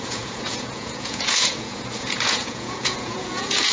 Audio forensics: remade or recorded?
remade